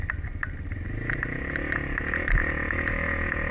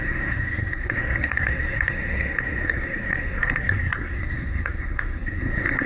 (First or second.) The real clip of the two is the first